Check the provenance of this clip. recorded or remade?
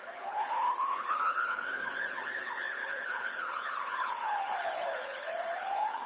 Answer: remade